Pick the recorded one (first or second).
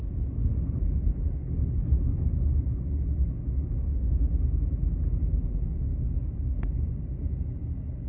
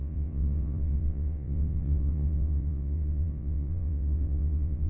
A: first